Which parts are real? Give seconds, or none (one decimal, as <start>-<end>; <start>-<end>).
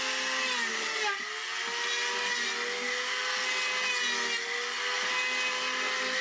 0.0-6.2